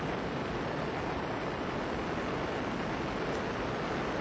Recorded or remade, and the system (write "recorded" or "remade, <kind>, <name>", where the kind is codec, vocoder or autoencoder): recorded